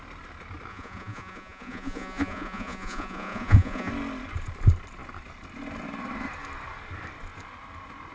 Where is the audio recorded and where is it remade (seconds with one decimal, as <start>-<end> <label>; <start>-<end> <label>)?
0.0-0.7 recorded; 0.7-3.9 remade; 3.9-8.1 recorded